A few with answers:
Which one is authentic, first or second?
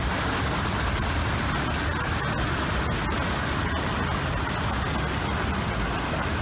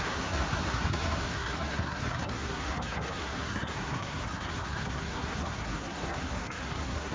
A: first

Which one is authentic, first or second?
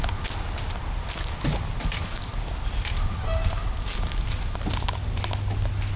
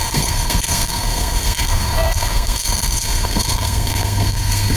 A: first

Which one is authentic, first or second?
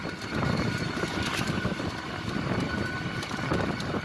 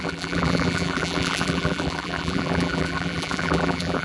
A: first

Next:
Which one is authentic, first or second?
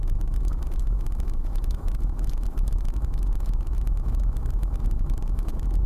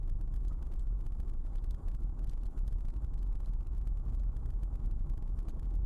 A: second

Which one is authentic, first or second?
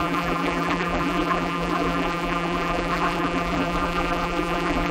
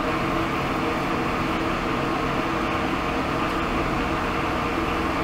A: second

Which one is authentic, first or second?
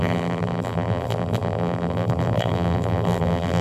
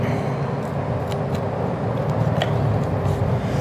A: second